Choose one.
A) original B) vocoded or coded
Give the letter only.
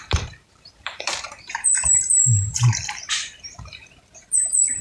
B